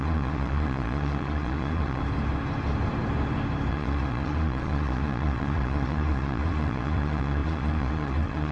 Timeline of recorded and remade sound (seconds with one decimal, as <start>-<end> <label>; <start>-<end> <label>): 0.0-2.0 remade; 2.0-3.7 recorded; 3.7-8.5 remade